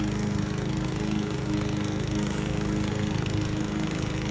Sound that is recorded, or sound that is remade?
remade